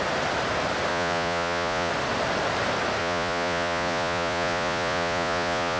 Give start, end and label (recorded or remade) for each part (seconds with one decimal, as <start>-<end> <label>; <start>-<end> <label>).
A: 0.0-0.9 recorded; 0.9-1.9 remade; 1.9-3.0 recorded; 3.0-5.8 remade